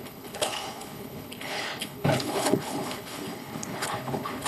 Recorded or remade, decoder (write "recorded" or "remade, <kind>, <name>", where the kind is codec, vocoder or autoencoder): remade, codec, HILCodec